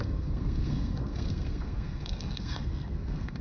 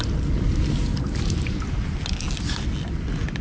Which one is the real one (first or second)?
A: second